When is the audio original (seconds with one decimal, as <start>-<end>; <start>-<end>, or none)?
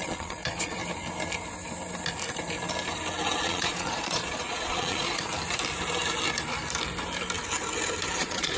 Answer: 0.8-3.4; 5.3-8.2